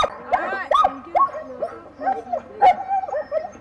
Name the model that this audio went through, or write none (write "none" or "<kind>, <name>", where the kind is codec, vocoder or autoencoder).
none